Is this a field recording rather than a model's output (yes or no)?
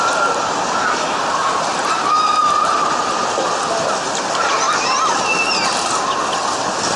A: yes